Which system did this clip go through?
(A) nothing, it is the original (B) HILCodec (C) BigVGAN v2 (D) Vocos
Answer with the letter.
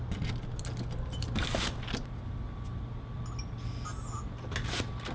A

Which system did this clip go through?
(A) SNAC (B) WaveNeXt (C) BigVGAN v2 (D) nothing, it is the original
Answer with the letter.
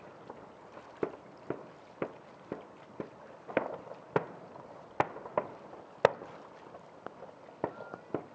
D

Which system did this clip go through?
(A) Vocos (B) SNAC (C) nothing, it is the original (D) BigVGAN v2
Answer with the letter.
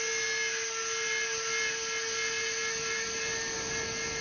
C